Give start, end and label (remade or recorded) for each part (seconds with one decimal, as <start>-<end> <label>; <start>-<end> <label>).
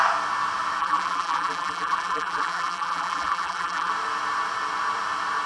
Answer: 0.0-0.8 recorded; 0.8-3.9 remade; 3.9-5.5 recorded